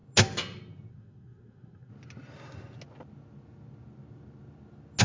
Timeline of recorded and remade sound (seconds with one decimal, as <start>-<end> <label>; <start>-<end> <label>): 0.0-0.9 recorded; 0.9-1.9 remade; 1.9-5.0 recorded